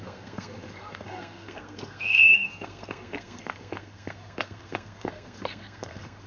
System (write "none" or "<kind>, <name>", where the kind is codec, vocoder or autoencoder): codec, SNAC